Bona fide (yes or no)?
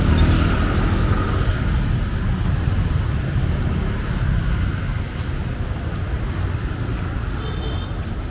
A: yes